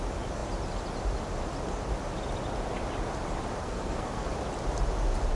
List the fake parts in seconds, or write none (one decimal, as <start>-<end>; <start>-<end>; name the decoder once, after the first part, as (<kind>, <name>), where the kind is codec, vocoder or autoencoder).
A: 3.6-4.3 (codec, SNAC)